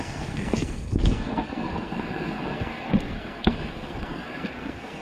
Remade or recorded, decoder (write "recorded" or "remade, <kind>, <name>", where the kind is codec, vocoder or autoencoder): remade, codec, SNAC